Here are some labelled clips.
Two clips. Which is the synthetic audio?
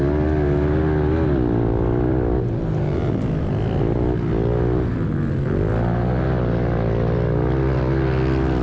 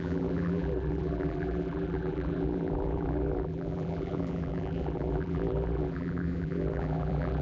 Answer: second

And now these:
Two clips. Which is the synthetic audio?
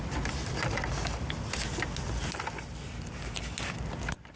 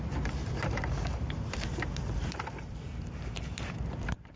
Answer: second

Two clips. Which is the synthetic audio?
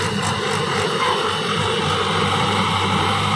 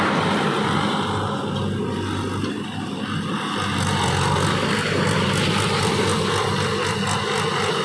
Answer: first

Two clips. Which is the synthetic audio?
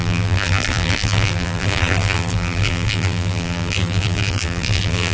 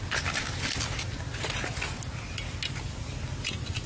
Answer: first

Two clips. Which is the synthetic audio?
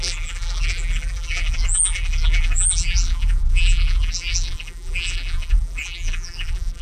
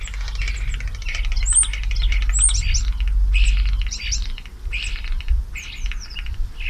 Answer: first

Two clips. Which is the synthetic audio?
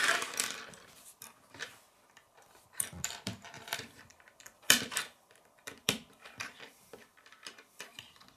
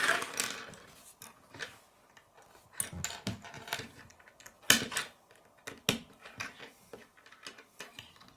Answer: first